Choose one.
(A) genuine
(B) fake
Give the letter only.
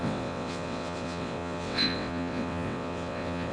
B